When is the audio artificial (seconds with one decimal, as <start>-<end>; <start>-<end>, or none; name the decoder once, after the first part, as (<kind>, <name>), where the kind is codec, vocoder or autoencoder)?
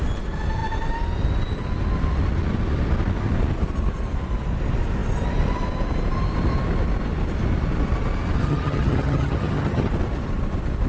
8.4-9.9 (vocoder, HiFi-GAN)